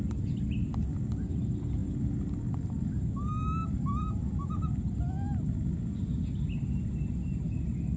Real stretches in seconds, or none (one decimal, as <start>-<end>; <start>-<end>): 0.0-8.0